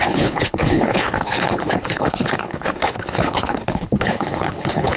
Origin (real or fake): fake